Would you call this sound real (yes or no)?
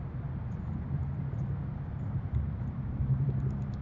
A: no